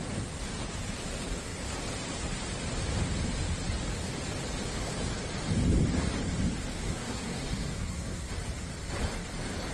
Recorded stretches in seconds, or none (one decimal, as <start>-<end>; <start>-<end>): 0.0-6.8; 8.3-9.7